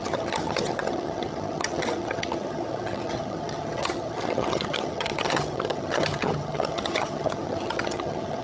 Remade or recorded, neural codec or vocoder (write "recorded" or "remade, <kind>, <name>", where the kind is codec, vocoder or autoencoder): remade, vocoder, HiFi-GAN